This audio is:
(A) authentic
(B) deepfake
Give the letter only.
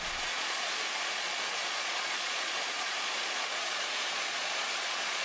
B